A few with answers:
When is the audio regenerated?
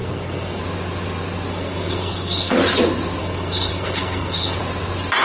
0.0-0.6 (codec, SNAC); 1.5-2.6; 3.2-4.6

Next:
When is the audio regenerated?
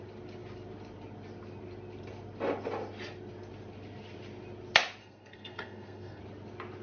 5.0-6.2 (codec, SNAC)